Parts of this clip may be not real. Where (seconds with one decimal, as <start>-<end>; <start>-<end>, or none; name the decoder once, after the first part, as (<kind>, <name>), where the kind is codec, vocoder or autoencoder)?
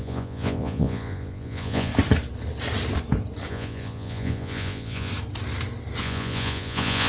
0.0-1.9 (vocoder, Vocos); 3.5-5.1; 6.0-7.1